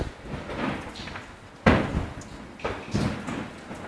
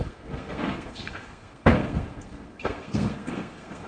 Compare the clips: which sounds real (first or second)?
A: first